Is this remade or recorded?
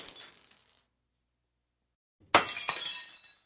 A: recorded